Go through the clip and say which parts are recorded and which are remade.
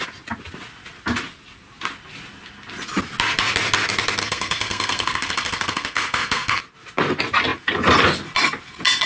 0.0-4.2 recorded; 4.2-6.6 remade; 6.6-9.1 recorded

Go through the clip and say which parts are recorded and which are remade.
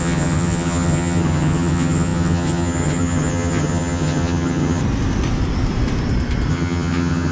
0.0-4.8 remade; 4.8-6.5 recorded; 6.5-7.3 remade